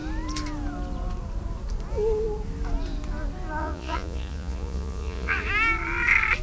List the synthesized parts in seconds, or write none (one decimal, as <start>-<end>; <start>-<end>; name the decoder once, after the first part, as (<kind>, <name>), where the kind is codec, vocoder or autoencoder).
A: 3.6-5.5 (vocoder, Vocos)